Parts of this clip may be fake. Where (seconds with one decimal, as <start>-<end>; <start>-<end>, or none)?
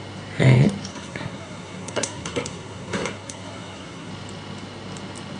0.9-4.1